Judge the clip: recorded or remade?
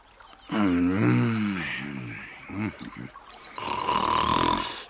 recorded